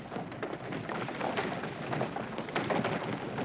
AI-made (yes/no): no